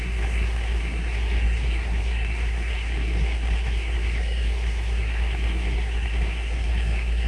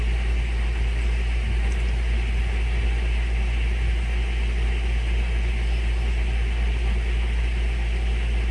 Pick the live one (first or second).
second